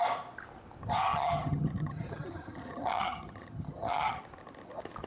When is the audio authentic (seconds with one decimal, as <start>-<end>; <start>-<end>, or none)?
0.0-1.1; 4.2-5.1